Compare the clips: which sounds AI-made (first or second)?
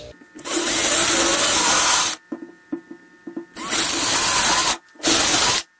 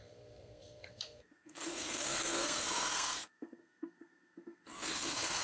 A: second